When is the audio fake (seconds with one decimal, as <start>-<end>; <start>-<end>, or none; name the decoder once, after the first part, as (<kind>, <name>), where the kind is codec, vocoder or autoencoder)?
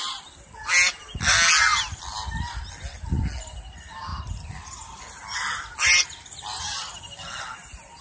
2.1-2.6 (vocoder, BigVGAN v2); 4.1-7.4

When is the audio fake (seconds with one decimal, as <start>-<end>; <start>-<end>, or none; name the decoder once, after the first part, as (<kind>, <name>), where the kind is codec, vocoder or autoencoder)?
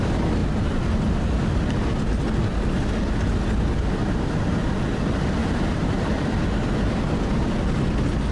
0.4-1.2 (vocoder, BigVGAN v2); 5.4-6.4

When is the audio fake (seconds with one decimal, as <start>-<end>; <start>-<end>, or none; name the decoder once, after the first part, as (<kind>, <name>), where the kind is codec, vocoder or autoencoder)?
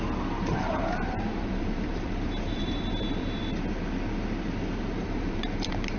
0.5-3.4 (vocoder, BigVGAN v2); 5.0-6.0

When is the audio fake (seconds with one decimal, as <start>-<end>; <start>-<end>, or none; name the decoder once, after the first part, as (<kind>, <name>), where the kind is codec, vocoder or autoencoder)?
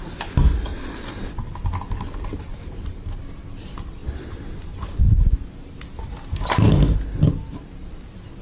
2.5-3.2 (vocoder, BigVGAN v2)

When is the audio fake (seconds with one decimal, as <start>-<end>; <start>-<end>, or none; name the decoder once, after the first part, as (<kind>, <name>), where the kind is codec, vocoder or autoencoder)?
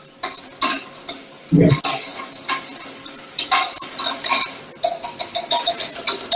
none